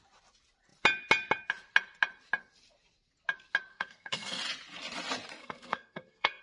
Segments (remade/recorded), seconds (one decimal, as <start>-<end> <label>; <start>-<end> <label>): 0.0-3.7 recorded; 3.7-4.4 remade; 4.4-5.4 recorded; 5.4-6.4 remade